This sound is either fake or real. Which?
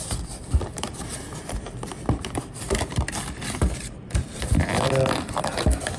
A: fake